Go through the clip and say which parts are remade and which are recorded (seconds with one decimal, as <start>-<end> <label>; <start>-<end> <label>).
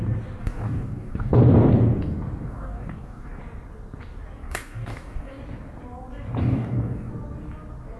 0.0-0.4 recorded; 0.4-1.4 remade; 1.4-2.4 recorded; 2.4-3.4 remade; 3.4-4.4 recorded; 4.4-5.4 remade; 5.4-6.4 recorded; 6.4-7.1 remade; 7.1-8.0 recorded